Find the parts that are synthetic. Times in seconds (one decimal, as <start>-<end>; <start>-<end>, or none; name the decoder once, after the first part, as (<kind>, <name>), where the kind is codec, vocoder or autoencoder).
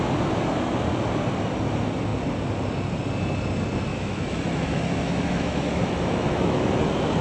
3.9-6.7 (autoencoder, DAC-VAE)